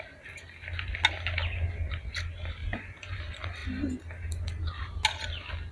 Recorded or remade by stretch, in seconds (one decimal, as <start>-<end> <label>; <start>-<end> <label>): 0.0-2.6 recorded; 2.6-3.2 remade; 3.2-5.7 recorded

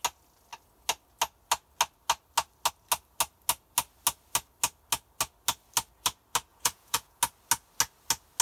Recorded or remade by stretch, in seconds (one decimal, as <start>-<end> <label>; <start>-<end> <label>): 0.0-6.5 recorded; 6.5-7.2 remade; 7.2-8.4 recorded

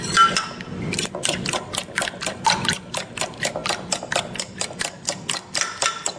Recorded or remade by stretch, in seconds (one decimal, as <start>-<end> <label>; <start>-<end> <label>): 0.0-6.2 recorded

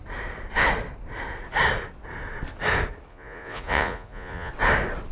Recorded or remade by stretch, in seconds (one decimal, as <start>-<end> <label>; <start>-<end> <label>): 0.0-3.1 recorded; 3.1-4.5 remade; 4.5-5.1 recorded